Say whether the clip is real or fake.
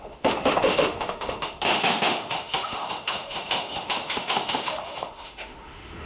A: fake